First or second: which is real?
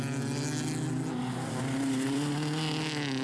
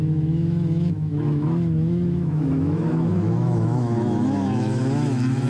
first